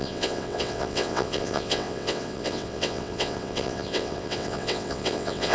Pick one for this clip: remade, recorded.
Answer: remade